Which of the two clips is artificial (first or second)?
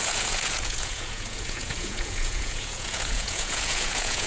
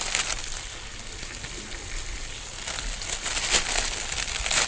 first